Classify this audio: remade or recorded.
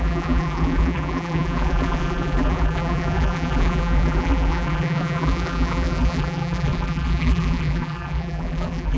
remade